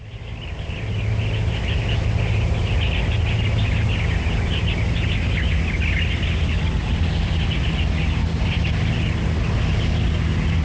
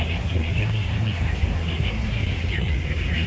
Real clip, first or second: first